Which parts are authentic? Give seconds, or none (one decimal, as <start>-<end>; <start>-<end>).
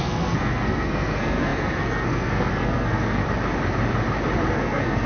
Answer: 3.2-4.5